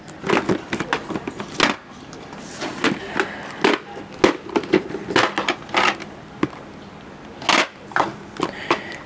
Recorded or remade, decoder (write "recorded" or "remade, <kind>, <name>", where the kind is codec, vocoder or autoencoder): recorded